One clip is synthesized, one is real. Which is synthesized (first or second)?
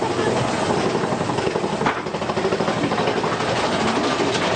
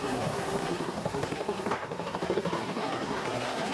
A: second